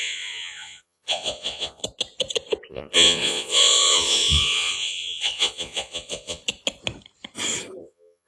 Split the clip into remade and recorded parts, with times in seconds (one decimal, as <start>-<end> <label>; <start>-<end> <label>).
0.0-1.8 remade; 1.8-2.7 recorded; 2.7-6.4 remade; 6.4-7.8 recorded; 7.8-8.3 remade

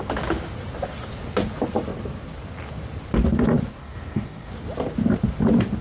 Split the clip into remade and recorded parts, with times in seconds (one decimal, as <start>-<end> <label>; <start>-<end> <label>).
0.0-3.7 recorded; 3.7-4.5 remade; 4.5-5.8 recorded